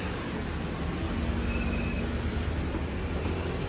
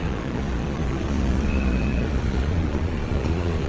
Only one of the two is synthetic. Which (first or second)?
second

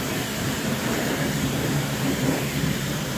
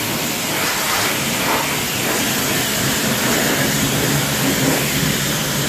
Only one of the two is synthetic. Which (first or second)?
first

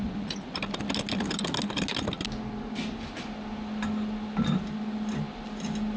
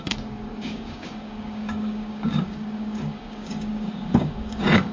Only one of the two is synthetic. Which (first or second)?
second